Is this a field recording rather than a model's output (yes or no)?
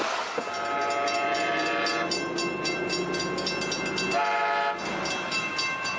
yes